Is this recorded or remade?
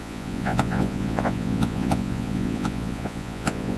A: remade